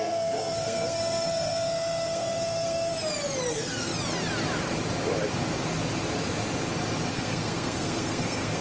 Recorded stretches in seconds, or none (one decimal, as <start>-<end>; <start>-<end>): 2.9-3.5; 3.9-7.1